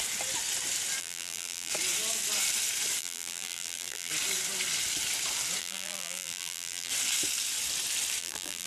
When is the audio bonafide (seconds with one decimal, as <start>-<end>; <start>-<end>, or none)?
0.0-1.0; 1.7-3.0; 4.1-5.6; 6.9-8.2